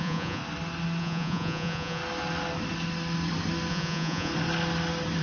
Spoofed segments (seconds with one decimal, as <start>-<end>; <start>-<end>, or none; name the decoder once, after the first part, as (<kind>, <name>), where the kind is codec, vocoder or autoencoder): 0.0-0.4 (vocoder, Vocos); 1.0-2.0; 3.7-4.3